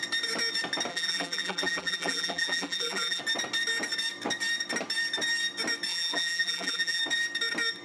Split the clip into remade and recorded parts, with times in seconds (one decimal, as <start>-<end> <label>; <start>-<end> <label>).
0.0-0.9 recorded; 0.9-3.2 remade; 3.2-5.9 recorded; 5.9-7.0 remade; 7.0-7.8 recorded